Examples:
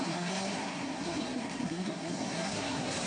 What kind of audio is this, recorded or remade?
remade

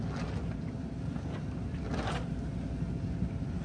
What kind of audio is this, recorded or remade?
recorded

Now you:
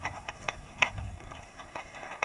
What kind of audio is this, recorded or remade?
remade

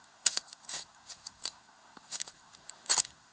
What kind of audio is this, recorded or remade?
remade